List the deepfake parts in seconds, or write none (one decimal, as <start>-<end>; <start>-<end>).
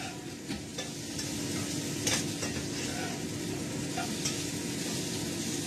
none